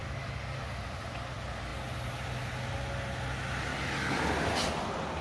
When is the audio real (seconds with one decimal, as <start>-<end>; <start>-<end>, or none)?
0.7-3.7; 4.2-5.2